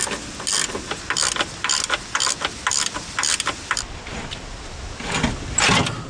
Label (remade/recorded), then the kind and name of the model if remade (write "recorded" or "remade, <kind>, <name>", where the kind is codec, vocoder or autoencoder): recorded